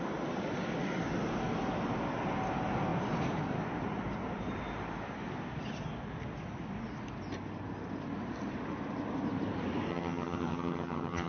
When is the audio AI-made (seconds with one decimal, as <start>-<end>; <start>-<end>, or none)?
9.9-11.3